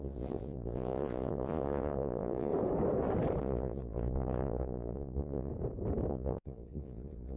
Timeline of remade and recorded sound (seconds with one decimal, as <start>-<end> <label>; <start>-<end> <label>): 0.0-2.5 remade; 2.5-3.4 recorded; 3.4-5.5 remade; 5.5-6.1 recorded; 6.1-7.4 remade